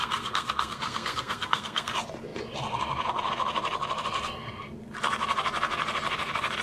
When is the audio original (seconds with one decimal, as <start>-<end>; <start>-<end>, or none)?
1.9-6.6